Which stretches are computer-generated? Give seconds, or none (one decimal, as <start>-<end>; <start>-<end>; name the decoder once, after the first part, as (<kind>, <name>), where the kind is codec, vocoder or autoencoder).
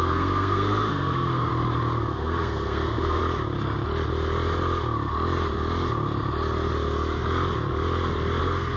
0.0-1.5 (codec, SNAC); 2.1-3.2; 8.4-8.8